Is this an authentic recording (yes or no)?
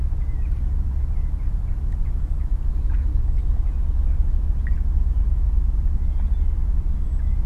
yes